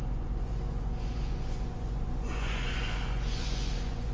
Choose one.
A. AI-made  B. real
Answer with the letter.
A